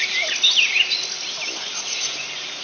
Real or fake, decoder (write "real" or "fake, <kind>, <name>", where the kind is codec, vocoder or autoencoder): real